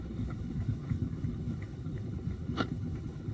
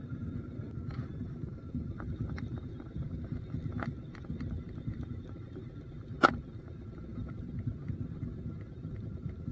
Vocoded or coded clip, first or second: first